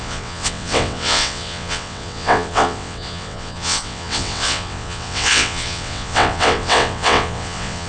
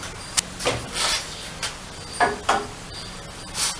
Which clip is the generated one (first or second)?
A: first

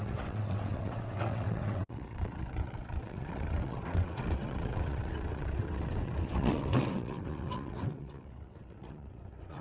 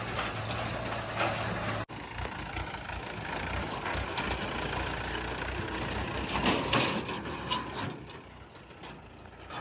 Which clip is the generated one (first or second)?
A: first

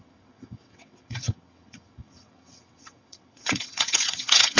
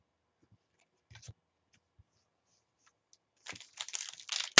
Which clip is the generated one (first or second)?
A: first